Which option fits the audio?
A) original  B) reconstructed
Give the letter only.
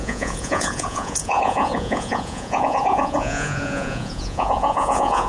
B